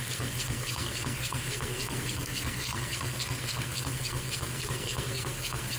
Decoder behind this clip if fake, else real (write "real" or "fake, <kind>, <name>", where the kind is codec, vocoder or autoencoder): fake, codec, SNAC